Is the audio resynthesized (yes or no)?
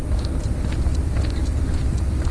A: yes